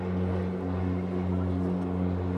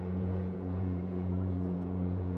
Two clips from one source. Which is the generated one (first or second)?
second